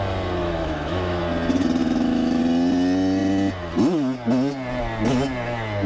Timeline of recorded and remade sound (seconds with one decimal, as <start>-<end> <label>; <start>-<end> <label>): 0.0-0.4 recorded; 0.4-1.2 remade; 1.2-1.8 recorded; 1.8-2.4 remade; 2.4-5.9 recorded